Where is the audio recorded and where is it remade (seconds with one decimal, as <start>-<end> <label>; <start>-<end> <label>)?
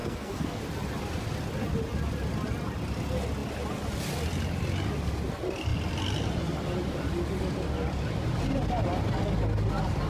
0.0-0.6 remade; 0.6-10.1 recorded